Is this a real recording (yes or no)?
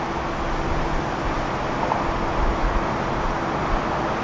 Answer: yes